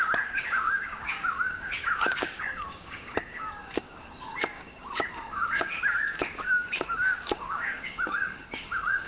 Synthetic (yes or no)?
yes